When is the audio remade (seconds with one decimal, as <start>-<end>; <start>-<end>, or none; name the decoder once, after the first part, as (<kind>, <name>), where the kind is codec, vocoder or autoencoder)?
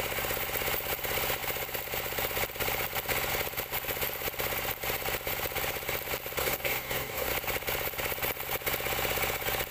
6.4-7.3 (codec, DAC)